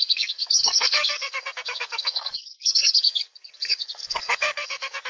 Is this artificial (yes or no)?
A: yes